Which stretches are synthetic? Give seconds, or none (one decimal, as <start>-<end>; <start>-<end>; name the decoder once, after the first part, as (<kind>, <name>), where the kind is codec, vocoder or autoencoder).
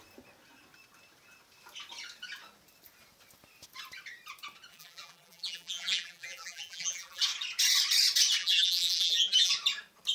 4.7-7.2 (vocoder, BigVGAN v2); 8.4-9.5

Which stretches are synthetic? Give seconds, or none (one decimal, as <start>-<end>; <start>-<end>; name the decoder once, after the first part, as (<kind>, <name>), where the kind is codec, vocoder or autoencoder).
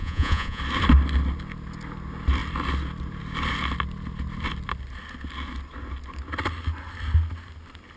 0.0-0.6 (vocoder, Vocos)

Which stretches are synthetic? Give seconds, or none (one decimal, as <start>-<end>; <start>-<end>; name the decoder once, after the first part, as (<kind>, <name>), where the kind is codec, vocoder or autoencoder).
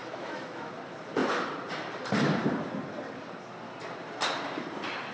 0.0-0.7 (autoencoder, DAC-VAE)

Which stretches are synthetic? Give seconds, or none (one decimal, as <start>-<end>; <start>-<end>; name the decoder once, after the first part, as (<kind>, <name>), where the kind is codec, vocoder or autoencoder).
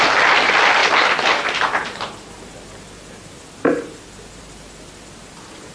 none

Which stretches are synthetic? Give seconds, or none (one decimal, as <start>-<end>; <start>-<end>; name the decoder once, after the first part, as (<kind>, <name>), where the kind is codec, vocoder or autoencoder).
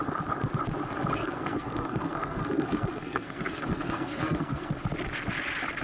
1.2-4.7 (codec, SNAC)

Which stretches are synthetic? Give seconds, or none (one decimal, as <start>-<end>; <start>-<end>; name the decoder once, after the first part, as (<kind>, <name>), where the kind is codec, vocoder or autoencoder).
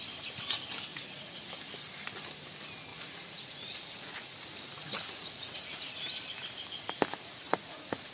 0.9-1.4 (vocoder, Vocos); 2.9-5.9; 7.1-8.1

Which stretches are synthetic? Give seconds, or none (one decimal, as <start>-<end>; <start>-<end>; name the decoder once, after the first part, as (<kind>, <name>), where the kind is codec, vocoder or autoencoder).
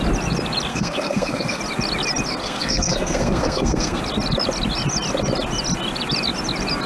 0.7-1.6 (codec, SNAC); 2.4-4.0